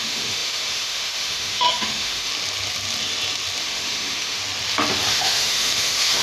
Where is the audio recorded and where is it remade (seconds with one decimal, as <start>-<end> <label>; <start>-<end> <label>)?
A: 0.0-2.3 remade; 2.3-3.6 recorded; 3.6-4.4 remade; 4.4-5.1 recorded; 5.1-6.2 remade